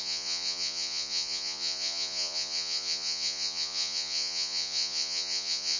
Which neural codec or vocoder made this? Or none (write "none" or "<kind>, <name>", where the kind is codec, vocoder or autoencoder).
vocoder, Vocos